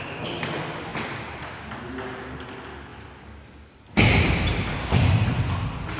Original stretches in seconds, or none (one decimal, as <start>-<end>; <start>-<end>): 0.0-6.0